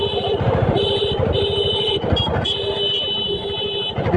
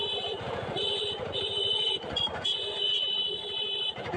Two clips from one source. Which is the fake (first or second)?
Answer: second